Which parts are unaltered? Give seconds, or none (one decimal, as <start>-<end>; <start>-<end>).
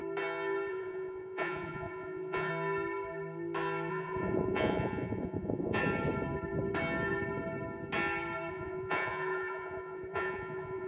0.0-0.7; 2.5-3.9; 5.8-8.5